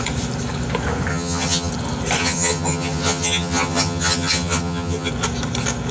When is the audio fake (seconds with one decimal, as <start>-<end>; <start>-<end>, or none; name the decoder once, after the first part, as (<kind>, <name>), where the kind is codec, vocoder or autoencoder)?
1.1-1.7 (vocoder, HiFi-GAN); 2.2-5.1